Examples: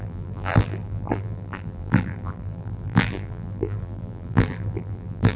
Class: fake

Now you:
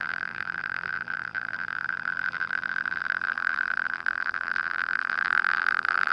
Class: fake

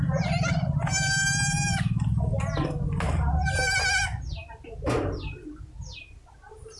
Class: real